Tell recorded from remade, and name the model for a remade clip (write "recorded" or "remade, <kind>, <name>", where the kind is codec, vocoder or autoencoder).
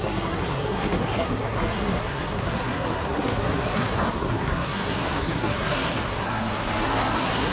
remade, codec, SNAC